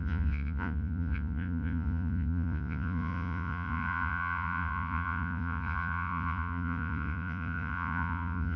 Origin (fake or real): fake